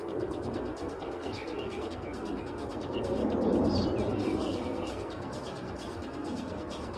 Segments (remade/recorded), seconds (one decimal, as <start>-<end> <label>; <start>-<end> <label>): 0.0-3.2 remade; 3.2-4.1 recorded; 4.1-7.0 remade